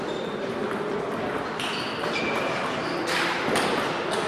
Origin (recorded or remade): recorded